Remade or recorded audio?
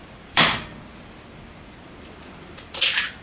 remade